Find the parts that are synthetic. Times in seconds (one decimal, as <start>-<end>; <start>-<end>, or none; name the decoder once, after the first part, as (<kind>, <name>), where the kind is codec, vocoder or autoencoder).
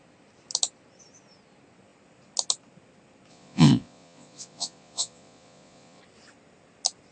3.3-6.0 (vocoder, Vocos)